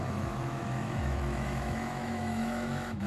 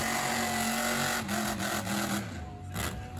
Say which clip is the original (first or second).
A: second